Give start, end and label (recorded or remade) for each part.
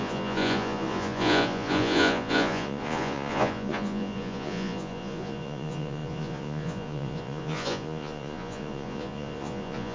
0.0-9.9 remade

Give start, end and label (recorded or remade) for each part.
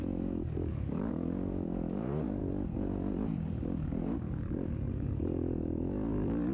0.0-2.4 remade; 2.4-3.9 recorded; 3.9-6.5 remade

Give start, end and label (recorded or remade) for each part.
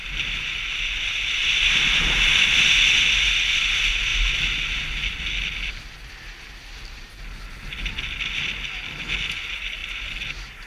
0.0-10.7 recorded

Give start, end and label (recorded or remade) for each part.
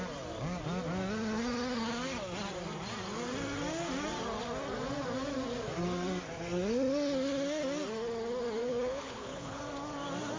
0.0-8.6 recorded; 8.6-9.6 remade; 9.6-10.4 recorded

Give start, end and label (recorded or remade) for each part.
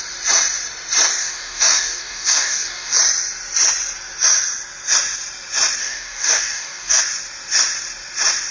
0.0-1.1 recorded; 1.1-3.0 remade; 3.0-5.8 recorded; 5.8-7.0 remade; 7.0-8.5 recorded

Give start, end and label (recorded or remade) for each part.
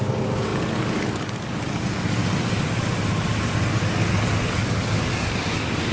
0.0-2.2 remade; 2.2-4.1 recorded; 4.1-5.9 remade